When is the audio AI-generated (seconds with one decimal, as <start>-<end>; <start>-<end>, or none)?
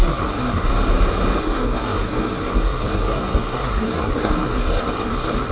0.0-0.7; 1.4-5.5